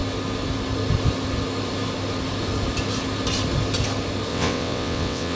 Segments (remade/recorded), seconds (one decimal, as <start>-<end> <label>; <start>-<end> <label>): 0.0-4.3 recorded; 4.3-5.4 remade